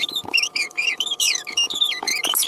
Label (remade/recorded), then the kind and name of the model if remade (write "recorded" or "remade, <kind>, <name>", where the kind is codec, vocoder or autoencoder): remade, autoencoder, DAC-VAE